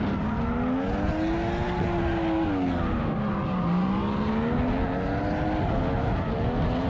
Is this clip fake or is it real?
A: real